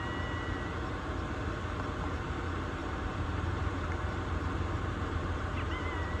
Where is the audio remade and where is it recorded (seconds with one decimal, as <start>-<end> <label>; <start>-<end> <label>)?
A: 0.0-2.8 recorded; 2.8-6.2 remade